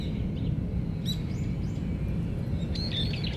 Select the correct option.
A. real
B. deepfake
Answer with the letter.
A